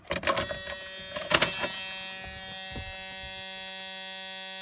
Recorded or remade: recorded